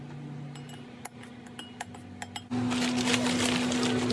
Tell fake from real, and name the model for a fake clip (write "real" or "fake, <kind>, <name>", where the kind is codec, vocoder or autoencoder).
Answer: real